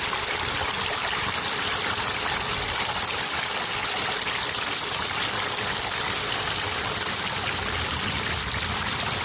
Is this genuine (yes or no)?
yes